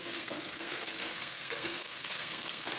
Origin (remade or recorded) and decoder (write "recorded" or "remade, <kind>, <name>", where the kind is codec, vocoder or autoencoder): remade, codec, SNAC